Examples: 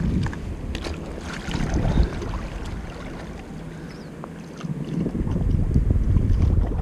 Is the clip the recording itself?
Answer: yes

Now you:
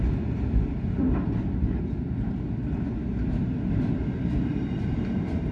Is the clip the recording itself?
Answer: yes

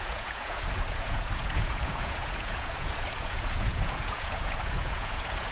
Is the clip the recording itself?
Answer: no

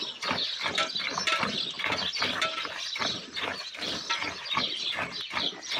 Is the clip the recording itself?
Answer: yes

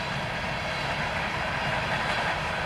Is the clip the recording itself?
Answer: yes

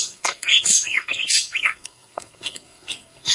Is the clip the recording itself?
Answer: no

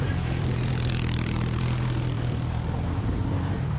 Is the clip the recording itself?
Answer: no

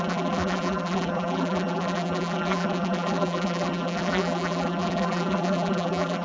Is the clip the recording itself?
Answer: no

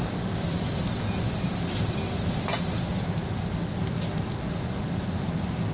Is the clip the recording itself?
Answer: yes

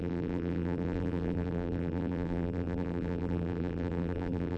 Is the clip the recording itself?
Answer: no